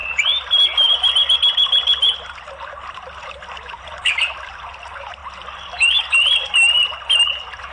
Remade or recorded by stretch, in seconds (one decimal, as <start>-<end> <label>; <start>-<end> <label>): 0.0-7.7 recorded